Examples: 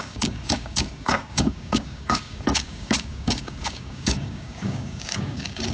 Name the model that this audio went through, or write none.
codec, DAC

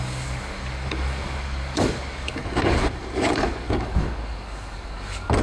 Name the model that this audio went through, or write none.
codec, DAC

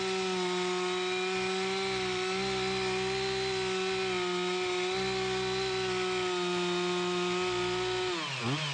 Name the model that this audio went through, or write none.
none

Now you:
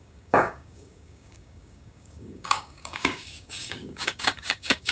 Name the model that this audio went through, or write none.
codec, DAC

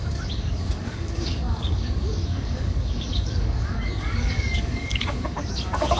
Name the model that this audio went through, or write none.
codec, DAC